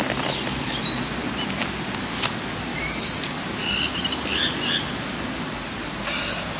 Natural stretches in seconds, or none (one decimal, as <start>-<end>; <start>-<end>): 0.0-2.7; 3.2-6.6